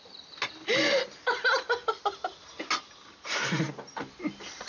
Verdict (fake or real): real